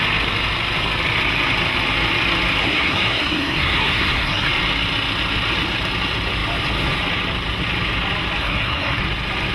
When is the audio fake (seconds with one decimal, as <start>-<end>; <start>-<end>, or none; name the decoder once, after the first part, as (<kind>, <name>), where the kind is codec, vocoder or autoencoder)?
2.6-4.5 (codec, SNAC); 8.4-9.0